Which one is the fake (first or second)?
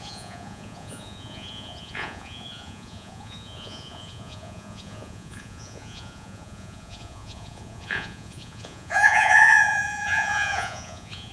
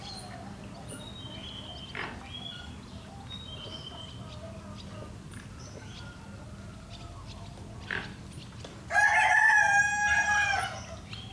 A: first